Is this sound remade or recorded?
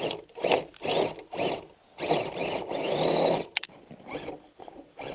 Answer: recorded